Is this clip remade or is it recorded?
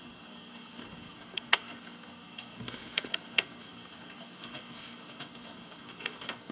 remade